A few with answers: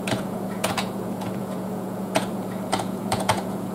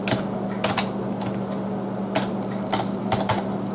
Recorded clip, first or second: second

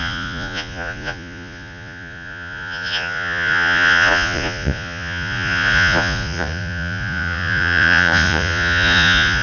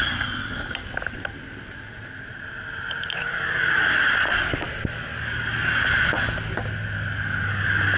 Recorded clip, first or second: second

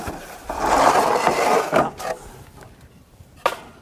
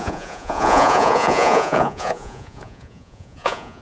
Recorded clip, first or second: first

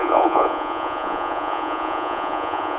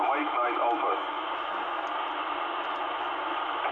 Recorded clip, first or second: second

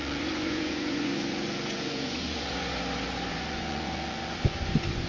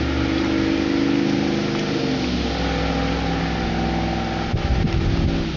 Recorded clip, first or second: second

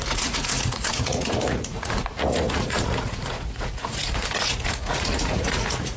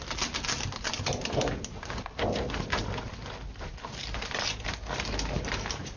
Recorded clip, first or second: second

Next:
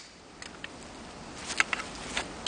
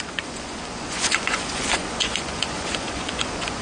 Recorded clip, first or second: first